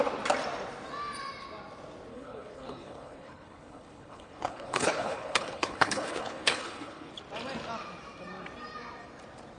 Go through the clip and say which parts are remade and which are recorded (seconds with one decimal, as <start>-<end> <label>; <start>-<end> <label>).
0.0-2.1 recorded; 2.1-7.1 remade; 7.1-9.6 recorded